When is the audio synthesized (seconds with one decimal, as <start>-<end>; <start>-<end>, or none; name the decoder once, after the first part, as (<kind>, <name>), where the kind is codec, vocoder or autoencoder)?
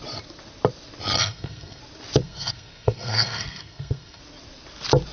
1.2-1.8 (codec, SNAC); 2.2-4.2